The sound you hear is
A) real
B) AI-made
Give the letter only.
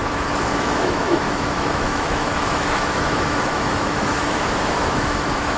B